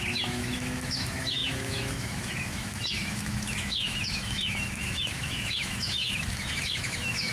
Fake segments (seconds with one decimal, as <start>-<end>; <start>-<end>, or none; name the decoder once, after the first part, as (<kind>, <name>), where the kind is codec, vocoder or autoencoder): 0.0-7.3 (autoencoder, DAC-VAE)